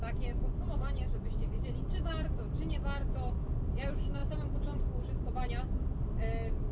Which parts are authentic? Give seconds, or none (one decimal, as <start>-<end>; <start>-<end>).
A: 0.0-6.7